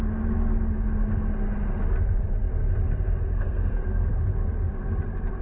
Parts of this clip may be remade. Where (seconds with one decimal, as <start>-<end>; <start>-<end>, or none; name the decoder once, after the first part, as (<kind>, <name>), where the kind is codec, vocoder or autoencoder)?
3.3-4.1 (codec, SNAC)